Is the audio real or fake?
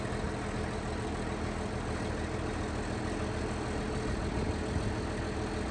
real